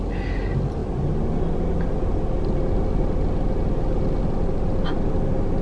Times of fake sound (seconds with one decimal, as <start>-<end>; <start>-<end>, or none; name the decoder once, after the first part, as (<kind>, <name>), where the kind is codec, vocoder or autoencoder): none